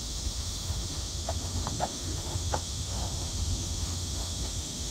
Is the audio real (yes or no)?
no